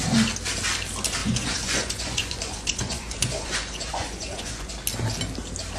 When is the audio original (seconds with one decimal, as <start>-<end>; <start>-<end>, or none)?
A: 0.0-1.2; 4.7-5.8